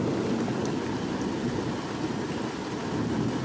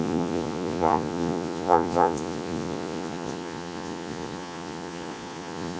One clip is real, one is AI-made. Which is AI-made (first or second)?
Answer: second